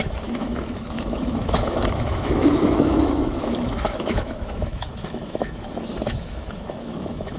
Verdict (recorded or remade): remade